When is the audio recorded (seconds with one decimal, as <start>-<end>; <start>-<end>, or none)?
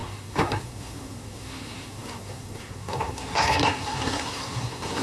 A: none